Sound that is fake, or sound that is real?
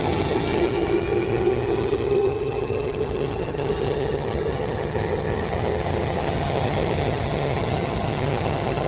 fake